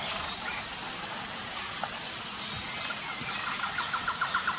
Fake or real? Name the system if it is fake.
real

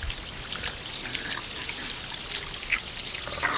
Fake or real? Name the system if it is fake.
real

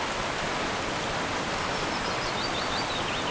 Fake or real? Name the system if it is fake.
real